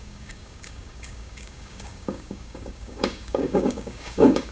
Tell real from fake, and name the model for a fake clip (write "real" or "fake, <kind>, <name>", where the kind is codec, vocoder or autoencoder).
fake, codec, DAC